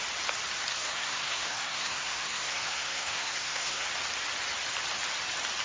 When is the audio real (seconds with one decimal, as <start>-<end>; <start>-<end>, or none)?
0.0-0.7; 3.9-5.6

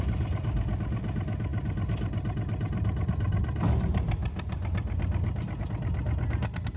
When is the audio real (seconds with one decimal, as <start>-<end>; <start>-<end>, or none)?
0.0-6.8

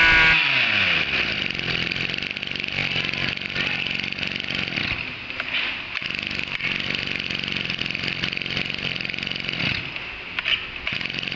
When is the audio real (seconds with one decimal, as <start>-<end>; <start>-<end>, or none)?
0.0-11.4